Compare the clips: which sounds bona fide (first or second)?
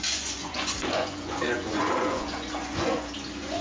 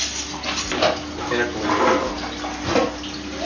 second